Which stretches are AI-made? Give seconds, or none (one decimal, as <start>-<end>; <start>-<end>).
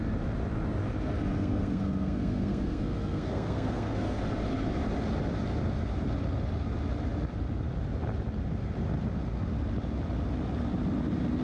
1.3-4.2